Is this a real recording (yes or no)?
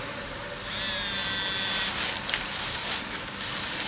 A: yes